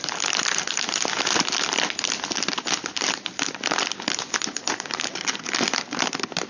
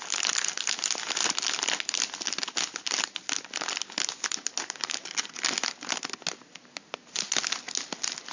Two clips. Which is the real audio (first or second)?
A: second